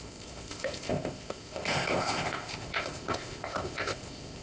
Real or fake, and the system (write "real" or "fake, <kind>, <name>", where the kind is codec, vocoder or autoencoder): fake, codec, ZipCodec